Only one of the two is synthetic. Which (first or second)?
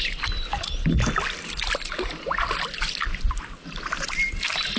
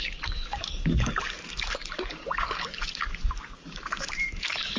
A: second